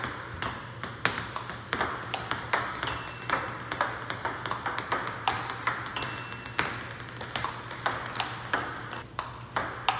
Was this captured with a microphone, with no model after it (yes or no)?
yes